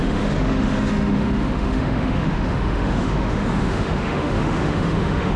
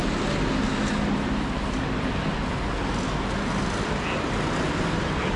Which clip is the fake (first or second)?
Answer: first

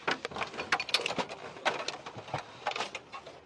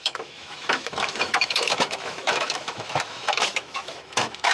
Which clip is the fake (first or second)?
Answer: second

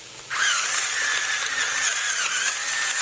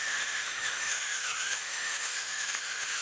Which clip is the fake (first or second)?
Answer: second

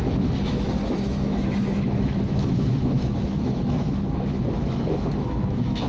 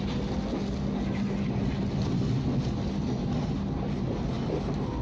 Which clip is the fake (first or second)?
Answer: first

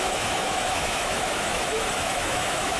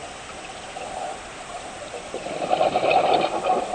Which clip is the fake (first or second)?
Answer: first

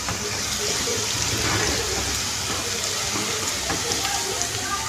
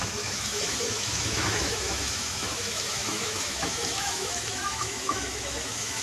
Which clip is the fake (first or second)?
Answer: second